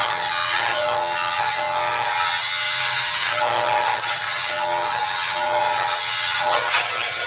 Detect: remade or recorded remade